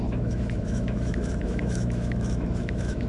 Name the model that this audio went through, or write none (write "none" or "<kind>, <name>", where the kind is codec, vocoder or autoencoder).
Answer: autoencoder, DAC-VAE